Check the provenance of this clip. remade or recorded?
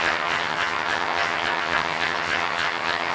remade